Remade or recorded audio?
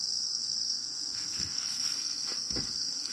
remade